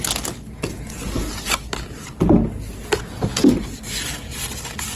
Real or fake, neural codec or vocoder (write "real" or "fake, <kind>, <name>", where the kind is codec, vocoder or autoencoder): real